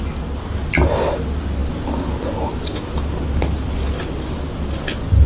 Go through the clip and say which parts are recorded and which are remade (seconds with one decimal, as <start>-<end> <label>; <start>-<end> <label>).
0.0-5.3 recorded